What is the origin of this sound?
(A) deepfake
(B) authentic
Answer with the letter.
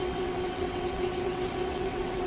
A